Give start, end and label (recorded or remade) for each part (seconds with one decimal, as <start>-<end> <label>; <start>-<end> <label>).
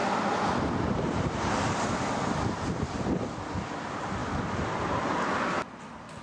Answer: 0.0-6.2 recorded